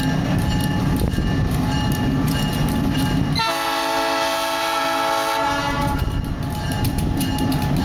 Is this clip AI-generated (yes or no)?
no